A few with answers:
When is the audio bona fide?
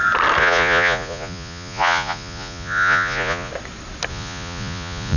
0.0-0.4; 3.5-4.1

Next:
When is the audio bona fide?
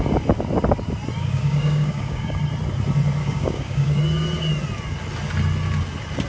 0.0-1.2; 2.4-3.2; 4.0-6.3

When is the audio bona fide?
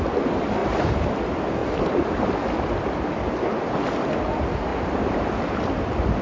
0.0-0.6; 1.1-1.6; 2.2-4.7; 5.5-6.2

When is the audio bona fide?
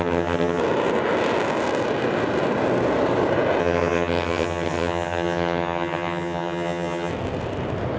0.6-3.6; 7.1-8.0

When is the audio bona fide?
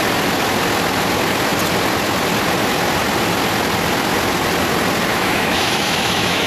0.0-5.1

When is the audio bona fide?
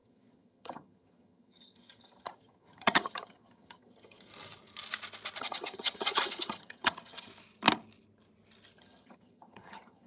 4.3-5.4; 7.3-8.8